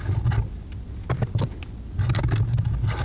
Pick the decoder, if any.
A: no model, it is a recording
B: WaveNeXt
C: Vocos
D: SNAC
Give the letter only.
A